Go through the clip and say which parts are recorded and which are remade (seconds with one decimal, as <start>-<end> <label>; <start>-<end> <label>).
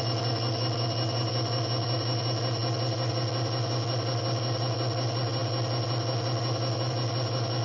0.0-7.6 recorded